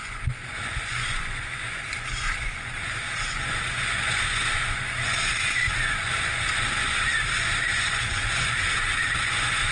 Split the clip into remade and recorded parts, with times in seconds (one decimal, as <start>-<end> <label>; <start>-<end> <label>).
0.0-9.7 remade